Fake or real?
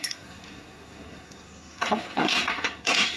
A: fake